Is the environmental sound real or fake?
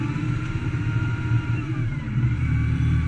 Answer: fake